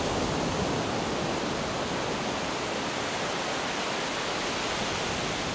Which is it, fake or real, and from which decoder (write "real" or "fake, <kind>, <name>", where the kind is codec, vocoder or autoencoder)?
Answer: real